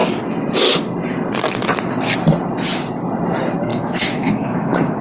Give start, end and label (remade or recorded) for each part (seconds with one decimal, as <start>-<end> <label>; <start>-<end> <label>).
0.0-3.7 recorded; 3.7-5.0 remade